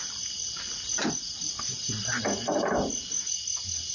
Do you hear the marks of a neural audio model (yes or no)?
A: no